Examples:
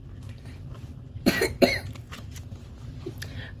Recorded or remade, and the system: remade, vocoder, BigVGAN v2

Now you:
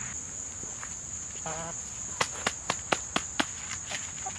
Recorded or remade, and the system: recorded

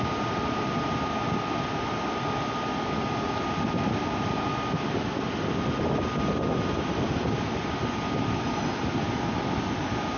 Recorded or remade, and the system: recorded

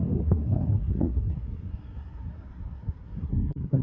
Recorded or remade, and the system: remade, codec, SNAC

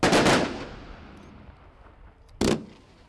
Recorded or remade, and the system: recorded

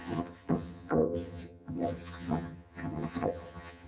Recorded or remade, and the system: remade, vocoder, HiFi-GAN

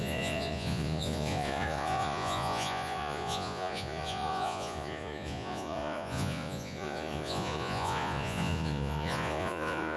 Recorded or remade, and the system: remade, vocoder, Vocos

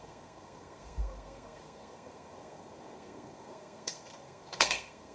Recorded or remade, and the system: remade, codec, SNAC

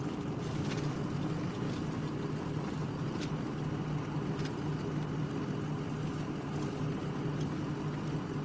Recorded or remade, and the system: recorded